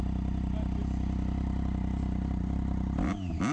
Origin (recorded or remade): recorded